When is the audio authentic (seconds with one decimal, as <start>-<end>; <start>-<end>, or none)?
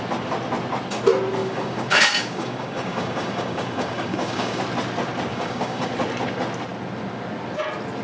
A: 0.0-1.4; 4.6-5.3; 5.9-8.0